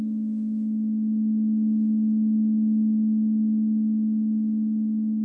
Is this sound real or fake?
real